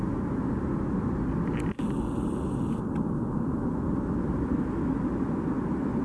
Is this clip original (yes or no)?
yes